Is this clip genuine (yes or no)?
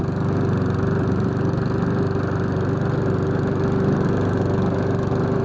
yes